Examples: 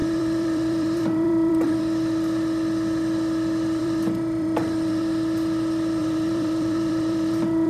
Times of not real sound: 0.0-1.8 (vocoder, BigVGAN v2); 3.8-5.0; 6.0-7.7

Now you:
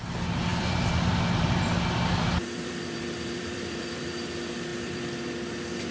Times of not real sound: 0.5-4.0 (vocoder, BigVGAN v2); 4.7-5.3

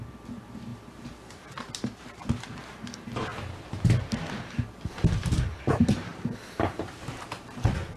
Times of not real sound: 0.7-2.6 (vocoder, BigVGAN v2); 3.3-4.2; 6.1-8.0

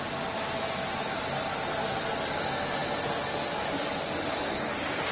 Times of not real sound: none

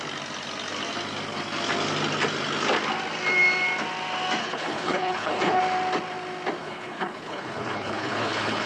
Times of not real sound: 4.4-5.6 (codec, HILCodec); 6.6-8.7

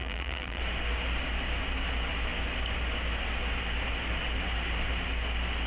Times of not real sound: 0.0-0.6 (vocoder, BigVGAN v2)

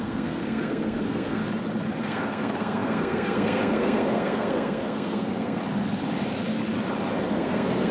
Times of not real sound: 0.0-1.4 (codec, SNAC); 2.0-5.6; 7.3-7.9

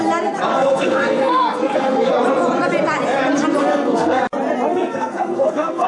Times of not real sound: 0.5-2.1 (codec, SNAC); 3.6-4.2; 4.7-5.9